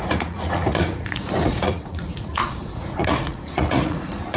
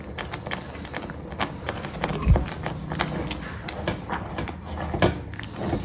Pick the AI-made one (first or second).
first